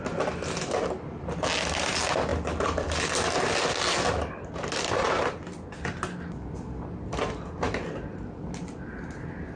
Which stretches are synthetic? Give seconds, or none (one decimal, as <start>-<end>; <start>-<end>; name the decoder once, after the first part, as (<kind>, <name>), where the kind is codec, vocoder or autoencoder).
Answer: none